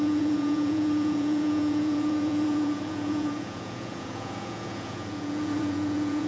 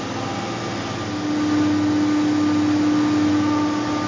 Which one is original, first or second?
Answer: second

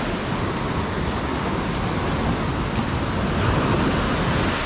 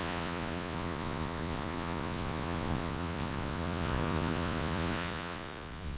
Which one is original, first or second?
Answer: first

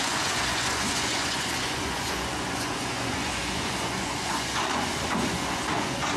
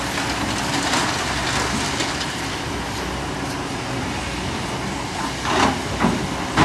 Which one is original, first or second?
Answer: second